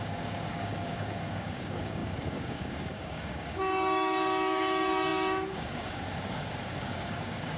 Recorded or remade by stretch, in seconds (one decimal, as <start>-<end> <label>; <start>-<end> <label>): 0.0-7.6 remade